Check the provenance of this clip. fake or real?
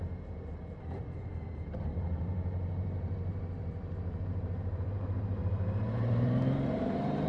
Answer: fake